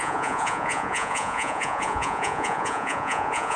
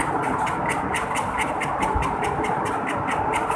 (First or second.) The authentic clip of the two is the second